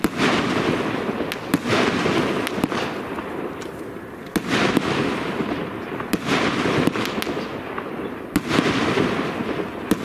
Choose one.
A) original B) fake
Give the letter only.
A